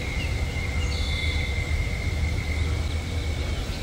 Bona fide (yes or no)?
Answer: yes